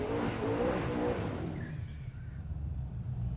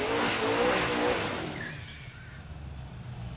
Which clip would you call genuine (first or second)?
second